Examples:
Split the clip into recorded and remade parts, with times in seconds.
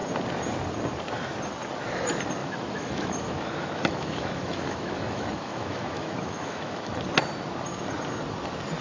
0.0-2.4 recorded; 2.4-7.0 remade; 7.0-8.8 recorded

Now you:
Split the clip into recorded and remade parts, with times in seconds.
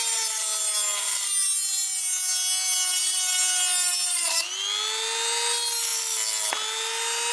0.0-7.3 recorded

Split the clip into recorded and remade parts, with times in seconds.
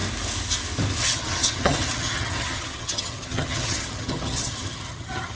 0.0-1.0 recorded; 1.0-5.4 remade